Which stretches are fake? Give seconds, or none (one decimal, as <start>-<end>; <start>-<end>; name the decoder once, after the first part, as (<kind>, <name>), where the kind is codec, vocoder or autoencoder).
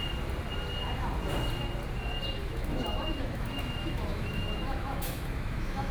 2.4-5.9 (autoencoder, DAC-VAE)